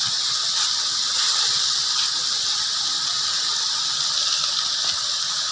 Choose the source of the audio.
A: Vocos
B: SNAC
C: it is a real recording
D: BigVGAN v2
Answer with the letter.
C